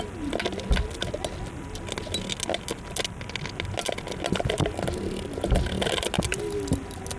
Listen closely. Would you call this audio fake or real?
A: real